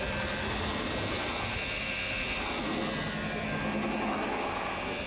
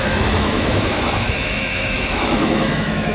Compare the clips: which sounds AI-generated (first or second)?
second